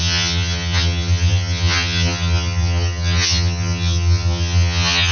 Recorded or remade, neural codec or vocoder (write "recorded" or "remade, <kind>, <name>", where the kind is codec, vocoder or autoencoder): remade, vocoder, HiFi-GAN